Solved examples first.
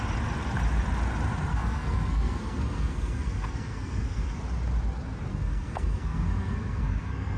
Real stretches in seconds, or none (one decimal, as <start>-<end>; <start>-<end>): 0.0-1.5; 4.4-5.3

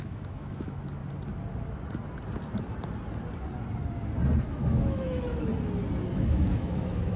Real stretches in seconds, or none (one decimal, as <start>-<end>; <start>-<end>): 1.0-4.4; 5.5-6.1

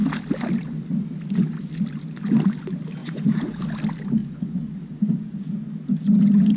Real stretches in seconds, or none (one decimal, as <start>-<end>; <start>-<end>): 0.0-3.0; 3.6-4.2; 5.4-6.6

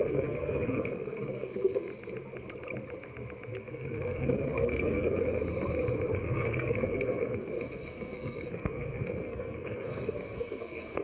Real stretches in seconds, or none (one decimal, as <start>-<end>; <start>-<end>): 1.9-3.6; 5.4-6.2

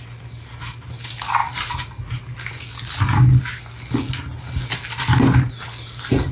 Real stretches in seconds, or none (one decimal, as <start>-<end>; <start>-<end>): 0.0-6.3